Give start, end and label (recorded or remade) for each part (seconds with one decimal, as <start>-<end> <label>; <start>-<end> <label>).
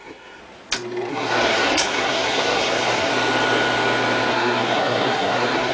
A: 0.0-0.4 remade; 0.4-1.1 recorded; 1.1-3.1 remade; 3.1-4.3 recorded; 4.3-5.7 remade